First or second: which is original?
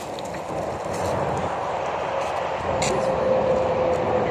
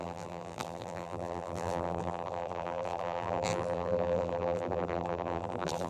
first